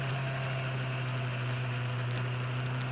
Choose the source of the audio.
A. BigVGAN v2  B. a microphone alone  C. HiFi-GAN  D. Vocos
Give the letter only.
B